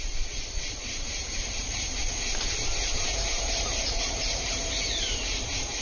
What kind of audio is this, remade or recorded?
remade